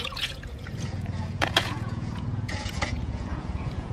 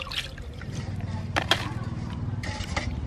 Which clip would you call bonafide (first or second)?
second